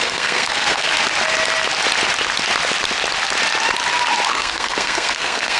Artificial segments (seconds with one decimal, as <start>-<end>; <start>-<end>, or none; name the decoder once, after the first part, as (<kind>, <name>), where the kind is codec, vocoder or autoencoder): 0.0-0.9 (codec, SNAC); 4.3-5.6